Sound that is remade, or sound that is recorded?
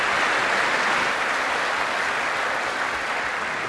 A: recorded